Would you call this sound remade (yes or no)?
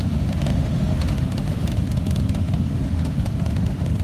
yes